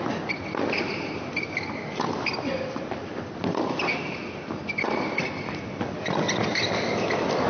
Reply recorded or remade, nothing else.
recorded